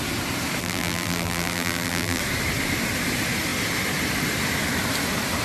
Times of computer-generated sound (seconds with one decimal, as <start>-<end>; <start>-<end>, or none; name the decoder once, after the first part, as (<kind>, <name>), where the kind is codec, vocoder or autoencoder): 0.6-2.2 (vocoder, BigVGAN v2)